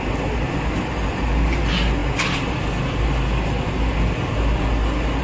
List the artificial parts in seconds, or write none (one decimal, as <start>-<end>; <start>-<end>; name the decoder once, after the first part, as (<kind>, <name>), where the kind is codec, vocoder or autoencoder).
none